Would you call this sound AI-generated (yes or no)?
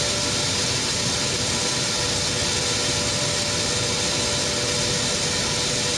no